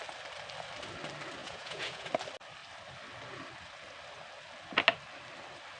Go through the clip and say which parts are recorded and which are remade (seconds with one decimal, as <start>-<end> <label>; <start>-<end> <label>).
0.0-1.4 recorded; 1.4-2.1 remade; 2.1-5.8 recorded

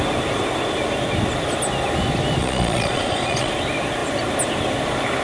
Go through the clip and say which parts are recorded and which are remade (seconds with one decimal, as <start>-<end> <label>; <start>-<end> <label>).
0.0-2.4 recorded; 2.4-3.5 remade; 3.5-5.2 recorded

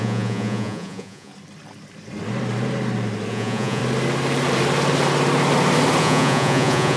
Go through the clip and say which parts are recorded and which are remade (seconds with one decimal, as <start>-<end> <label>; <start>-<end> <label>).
0.0-1.3 remade; 1.3-3.3 recorded; 3.3-3.8 remade; 3.8-6.0 recorded; 6.0-7.0 remade

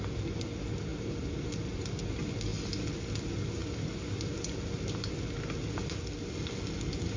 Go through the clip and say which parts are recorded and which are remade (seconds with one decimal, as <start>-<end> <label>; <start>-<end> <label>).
0.0-7.2 recorded

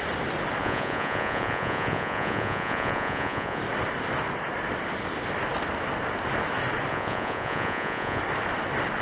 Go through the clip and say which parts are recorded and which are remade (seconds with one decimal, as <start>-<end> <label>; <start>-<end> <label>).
0.0-0.6 recorded; 0.6-3.6 remade; 3.6-6.9 recorded; 6.9-8.2 remade; 8.2-9.0 recorded

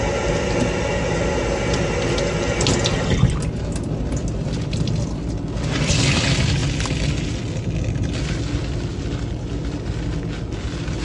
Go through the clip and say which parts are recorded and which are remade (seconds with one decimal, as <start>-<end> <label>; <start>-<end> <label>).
0.0-11.0 recorded

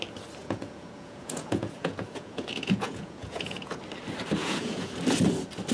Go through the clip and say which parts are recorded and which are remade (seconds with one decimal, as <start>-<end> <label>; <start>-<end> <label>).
0.0-0.4 recorded; 0.4-3.8 remade; 3.8-4.4 recorded; 4.4-4.9 remade; 4.9-5.7 recorded